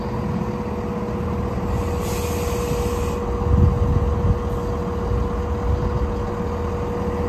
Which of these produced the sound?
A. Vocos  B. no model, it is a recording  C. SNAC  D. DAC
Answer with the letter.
B